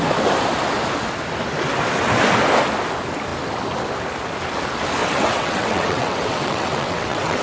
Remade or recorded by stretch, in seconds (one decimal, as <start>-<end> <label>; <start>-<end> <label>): 0.0-5.0 recorded; 5.0-7.4 remade